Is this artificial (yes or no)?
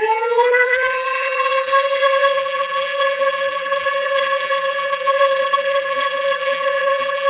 yes